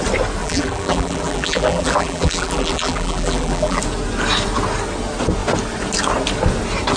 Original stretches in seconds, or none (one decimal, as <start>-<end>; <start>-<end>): 0.0-0.4; 3.8-7.0